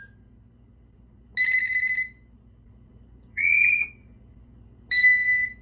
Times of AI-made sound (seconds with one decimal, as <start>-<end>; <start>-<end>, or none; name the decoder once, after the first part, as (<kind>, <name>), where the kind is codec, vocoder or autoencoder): 3.3-3.9 (vocoder, Vocos)